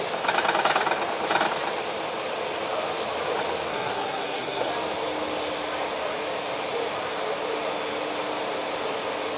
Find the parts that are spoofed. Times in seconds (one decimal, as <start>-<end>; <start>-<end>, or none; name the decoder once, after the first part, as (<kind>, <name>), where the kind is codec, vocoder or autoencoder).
3.7-4.7 (codec, SNAC)